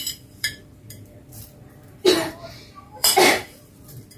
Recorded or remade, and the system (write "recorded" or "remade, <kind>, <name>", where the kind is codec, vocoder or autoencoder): remade, vocoder, BigVGAN v2